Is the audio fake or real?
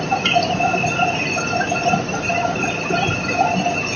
real